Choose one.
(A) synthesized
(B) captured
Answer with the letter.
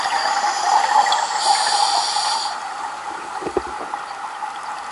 B